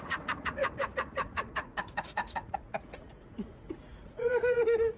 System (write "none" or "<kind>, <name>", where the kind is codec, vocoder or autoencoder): vocoder, Vocos